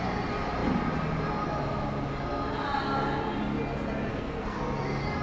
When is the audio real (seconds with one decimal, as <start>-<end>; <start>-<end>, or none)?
0.0-4.1; 4.6-5.2